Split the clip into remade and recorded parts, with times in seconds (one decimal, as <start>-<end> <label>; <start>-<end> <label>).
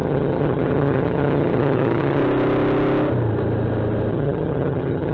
0.0-2.2 remade; 2.2-4.1 recorded; 4.1-5.1 remade